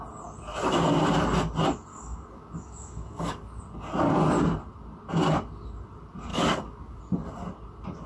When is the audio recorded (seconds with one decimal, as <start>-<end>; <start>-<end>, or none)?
0.0-1.9; 3.6-6.3; 7.0-8.1